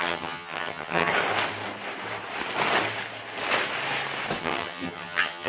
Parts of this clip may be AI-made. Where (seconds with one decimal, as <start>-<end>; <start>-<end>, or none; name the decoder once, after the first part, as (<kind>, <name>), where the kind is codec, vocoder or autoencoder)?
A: 0.0-1.1 (vocoder, HiFi-GAN); 4.4-5.5